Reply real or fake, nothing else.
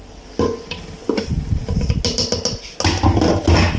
real